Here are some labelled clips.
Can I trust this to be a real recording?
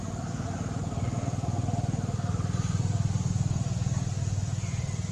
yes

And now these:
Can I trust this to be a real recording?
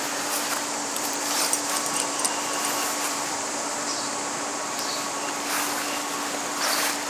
no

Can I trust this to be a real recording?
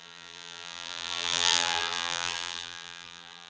no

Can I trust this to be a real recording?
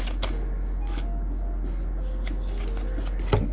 yes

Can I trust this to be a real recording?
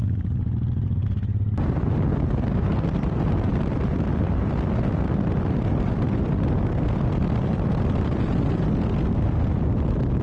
yes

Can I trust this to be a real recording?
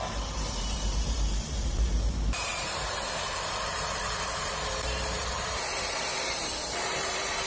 no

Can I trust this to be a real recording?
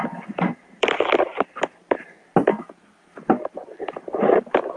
no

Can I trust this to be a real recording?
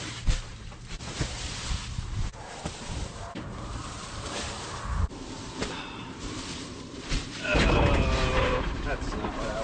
no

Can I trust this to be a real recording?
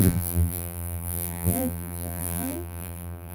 no